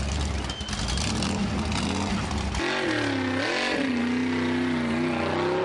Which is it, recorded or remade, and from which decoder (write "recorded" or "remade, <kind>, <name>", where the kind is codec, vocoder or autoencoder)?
recorded